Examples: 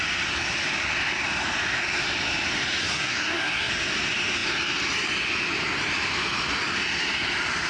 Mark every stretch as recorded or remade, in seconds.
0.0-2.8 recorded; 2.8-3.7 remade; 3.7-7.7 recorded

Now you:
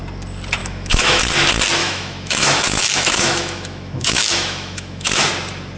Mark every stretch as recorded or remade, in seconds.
0.0-0.6 recorded; 0.6-1.2 remade; 1.2-1.8 recorded; 1.8-5.3 remade; 5.3-5.8 recorded

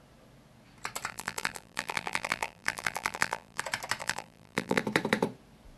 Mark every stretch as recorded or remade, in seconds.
0.0-1.1 recorded; 1.1-3.6 remade; 3.6-4.0 recorded; 4.0-4.8 remade; 4.8-5.8 recorded